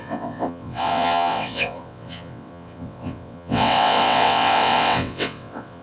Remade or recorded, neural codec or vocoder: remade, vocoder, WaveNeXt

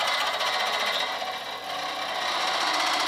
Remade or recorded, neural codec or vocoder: recorded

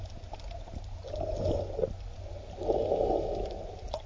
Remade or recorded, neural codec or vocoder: recorded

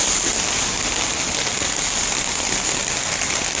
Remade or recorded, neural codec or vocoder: recorded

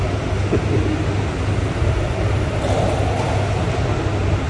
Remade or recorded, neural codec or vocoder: recorded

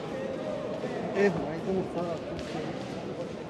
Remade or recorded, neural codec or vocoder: recorded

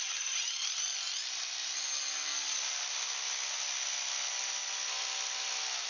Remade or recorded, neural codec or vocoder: recorded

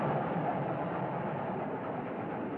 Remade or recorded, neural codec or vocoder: recorded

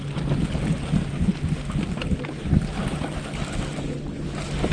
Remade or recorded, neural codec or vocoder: recorded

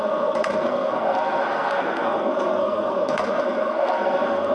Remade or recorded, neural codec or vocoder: remade, codec, SNAC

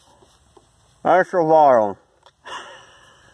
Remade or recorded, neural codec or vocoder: recorded